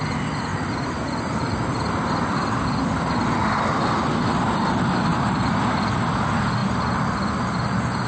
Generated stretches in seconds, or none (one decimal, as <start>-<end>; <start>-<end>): 0.5-2.1; 5.1-6.1